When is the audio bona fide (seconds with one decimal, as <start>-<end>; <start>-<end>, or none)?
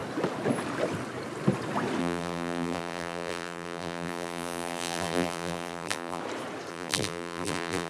0.0-2.0; 6.2-6.7